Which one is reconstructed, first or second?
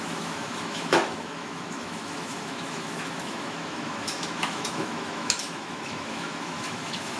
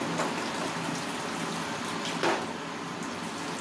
first